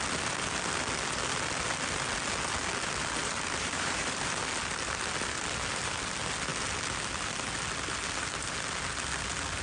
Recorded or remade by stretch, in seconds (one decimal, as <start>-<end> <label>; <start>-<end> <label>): 0.0-3.2 recorded; 3.2-4.4 remade; 4.4-9.6 recorded